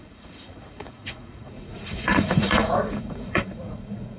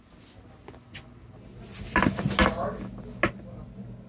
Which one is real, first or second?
second